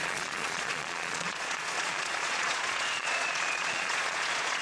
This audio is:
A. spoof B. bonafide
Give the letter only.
A